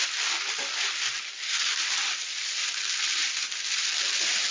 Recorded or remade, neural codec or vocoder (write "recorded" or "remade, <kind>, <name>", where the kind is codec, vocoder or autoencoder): recorded